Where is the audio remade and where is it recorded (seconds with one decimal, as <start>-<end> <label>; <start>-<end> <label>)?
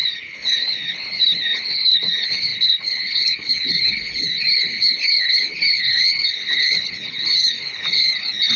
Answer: 0.0-8.6 remade